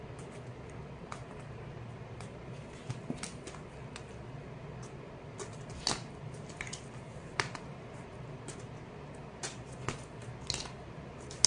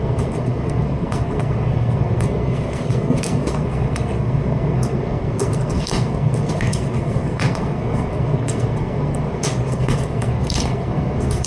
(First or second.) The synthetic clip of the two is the second